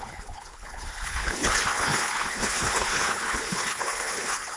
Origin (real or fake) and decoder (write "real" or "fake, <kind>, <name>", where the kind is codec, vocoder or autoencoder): fake, codec, HILCodec